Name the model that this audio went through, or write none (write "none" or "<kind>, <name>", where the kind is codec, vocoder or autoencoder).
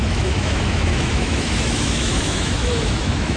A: autoencoder, DAC-VAE